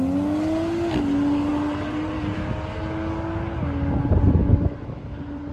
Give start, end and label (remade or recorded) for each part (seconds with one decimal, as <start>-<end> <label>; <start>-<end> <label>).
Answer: 0.0-1.5 recorded; 1.5-2.4 remade; 2.4-5.5 recorded